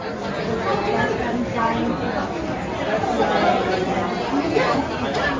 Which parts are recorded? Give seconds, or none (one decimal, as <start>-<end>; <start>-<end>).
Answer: 0.0-5.4